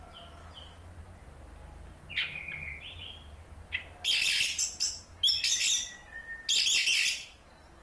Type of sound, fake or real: real